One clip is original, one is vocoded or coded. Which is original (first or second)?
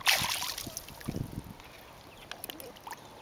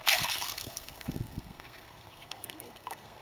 first